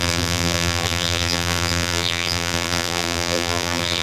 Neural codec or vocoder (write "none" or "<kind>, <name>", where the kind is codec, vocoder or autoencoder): vocoder, BigVGAN v2